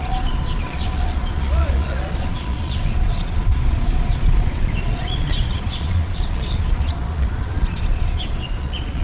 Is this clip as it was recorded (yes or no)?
no